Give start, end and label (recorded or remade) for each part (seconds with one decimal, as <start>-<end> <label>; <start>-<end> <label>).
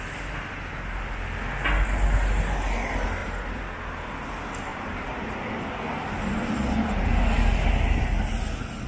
0.0-3.2 recorded; 3.2-3.8 remade; 3.8-4.7 recorded; 4.7-5.7 remade; 5.7-8.9 recorded